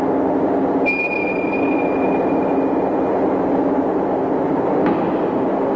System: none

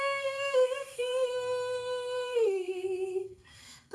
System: codec, SNAC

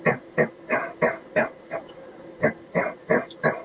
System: none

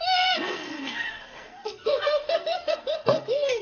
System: codec, SNAC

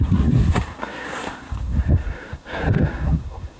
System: codec, SNAC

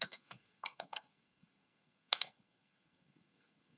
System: codec, SNAC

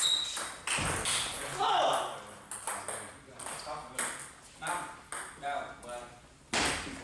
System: none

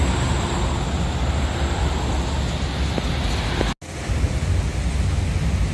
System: none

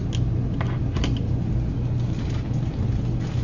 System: none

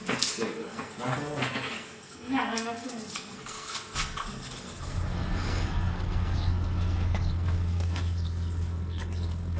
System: codec, SNAC